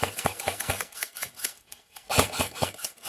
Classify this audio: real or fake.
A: fake